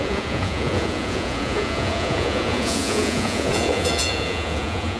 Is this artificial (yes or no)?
yes